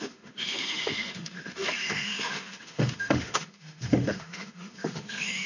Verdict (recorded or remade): remade